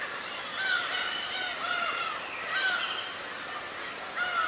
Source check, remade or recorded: recorded